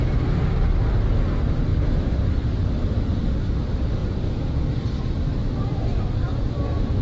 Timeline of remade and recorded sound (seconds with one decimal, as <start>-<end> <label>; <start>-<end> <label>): 0.0-4.0 recorded; 4.0-4.8 remade; 4.8-6.3 recorded; 6.3-7.0 remade